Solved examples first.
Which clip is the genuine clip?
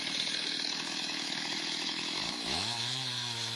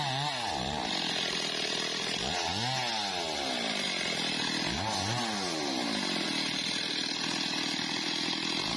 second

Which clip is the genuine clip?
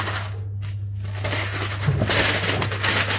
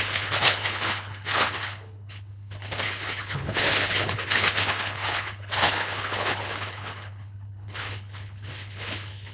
first